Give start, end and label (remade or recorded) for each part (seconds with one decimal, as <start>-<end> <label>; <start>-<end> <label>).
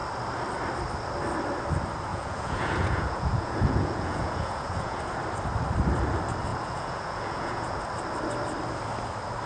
0.0-2.1 recorded; 2.1-5.0 remade; 5.0-6.5 recorded; 6.5-7.8 remade; 7.8-9.5 recorded